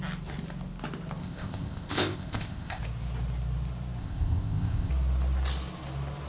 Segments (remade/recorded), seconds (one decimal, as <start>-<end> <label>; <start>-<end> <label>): 0.0-1.2 recorded; 1.2-2.8 remade; 2.8-4.0 recorded; 4.0-4.9 remade; 4.9-6.3 recorded